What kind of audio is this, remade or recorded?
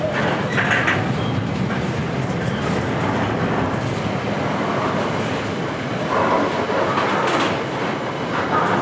recorded